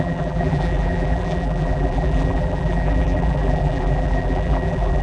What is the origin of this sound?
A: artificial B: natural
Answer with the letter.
A